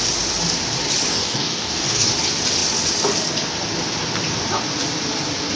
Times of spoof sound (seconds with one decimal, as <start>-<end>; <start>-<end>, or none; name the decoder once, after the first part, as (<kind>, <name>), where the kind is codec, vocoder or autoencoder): 1.1-2.1 (codec, DAC)

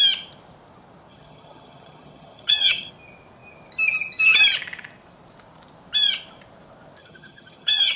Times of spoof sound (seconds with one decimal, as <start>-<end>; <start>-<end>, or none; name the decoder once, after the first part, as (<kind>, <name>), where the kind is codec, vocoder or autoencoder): 1.1-2.9 (vocoder, HiFi-GAN); 7.0-8.0

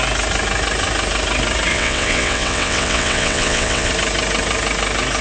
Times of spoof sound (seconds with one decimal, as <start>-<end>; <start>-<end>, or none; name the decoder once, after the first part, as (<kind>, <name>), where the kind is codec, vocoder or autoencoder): 1.7-3.9 (vocoder, WaveNeXt)

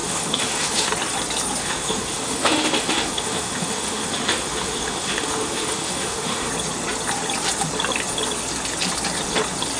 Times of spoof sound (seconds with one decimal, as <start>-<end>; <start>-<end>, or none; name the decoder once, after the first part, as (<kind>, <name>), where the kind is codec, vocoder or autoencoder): 0.0-0.9 (autoencoder, DAC-VAE); 1.6-6.5